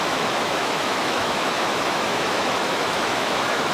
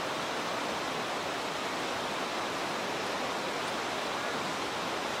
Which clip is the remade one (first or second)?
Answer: first